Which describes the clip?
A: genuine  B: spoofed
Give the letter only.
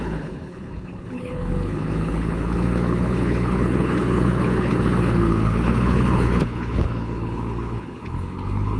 B